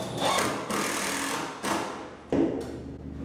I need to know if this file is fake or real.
real